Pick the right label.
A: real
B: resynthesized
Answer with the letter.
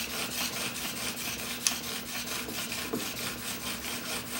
A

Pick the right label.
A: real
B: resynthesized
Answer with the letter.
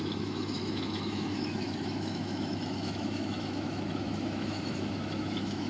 B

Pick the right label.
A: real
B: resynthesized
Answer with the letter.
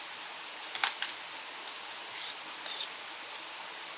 A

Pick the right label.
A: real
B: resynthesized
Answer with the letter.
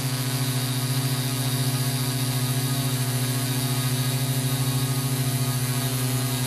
A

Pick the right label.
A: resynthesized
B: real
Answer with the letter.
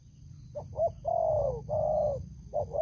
B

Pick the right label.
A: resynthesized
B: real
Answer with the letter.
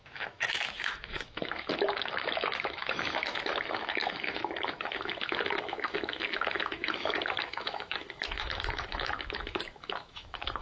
A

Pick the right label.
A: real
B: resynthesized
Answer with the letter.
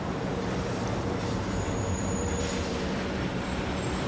B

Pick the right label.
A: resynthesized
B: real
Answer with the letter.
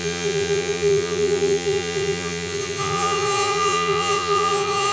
A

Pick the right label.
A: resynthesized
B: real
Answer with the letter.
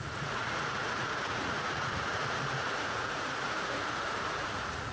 A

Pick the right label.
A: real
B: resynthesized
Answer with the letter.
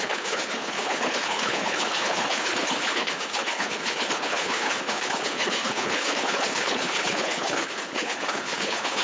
B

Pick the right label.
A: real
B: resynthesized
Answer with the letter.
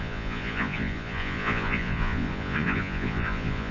B